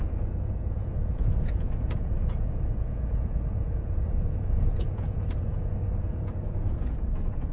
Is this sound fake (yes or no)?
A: yes